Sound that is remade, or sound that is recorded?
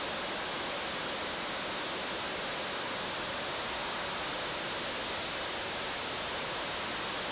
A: recorded